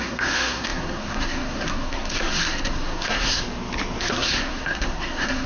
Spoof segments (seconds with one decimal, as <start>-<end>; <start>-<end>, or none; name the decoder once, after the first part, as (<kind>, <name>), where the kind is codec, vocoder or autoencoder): 0.0-3.4 (codec, SNAC); 4.0-5.5